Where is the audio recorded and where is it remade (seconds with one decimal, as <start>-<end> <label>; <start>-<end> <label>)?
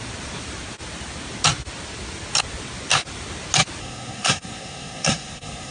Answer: 0.0-3.8 recorded; 3.8-5.7 remade